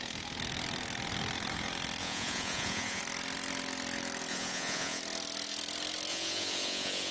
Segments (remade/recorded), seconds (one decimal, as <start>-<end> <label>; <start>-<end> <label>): 0.0-2.0 recorded; 2.0-3.0 remade; 3.0-4.3 recorded; 4.3-5.0 remade; 5.0-6.1 recorded; 6.1-7.1 remade